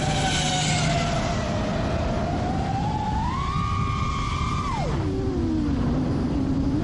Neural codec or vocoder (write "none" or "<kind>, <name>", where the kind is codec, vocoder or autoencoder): none